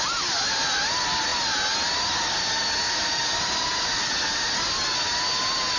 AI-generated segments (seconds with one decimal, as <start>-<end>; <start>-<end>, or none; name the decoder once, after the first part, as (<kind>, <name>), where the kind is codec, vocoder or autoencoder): none

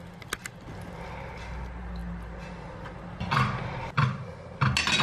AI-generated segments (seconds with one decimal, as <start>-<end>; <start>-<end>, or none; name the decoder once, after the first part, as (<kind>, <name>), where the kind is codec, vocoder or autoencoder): none

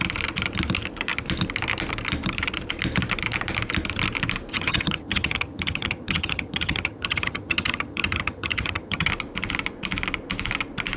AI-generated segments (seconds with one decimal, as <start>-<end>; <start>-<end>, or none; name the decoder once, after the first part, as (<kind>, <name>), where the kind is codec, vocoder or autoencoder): 4.5-9.1 (vocoder, HiFi-GAN)